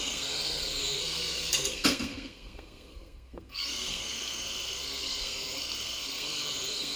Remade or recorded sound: remade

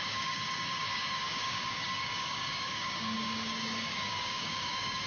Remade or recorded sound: remade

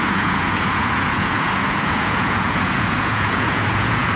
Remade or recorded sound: remade